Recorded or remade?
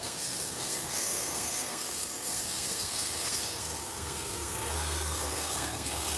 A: remade